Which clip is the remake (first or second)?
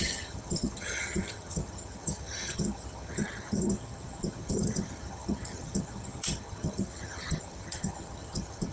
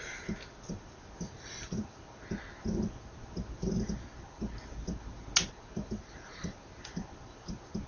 first